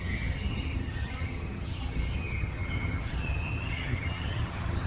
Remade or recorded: remade